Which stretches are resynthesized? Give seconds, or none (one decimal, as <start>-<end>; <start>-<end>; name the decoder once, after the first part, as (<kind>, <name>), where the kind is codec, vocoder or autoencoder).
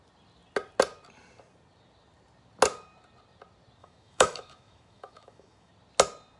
3.8-5.7 (autoencoder, DAC-VAE)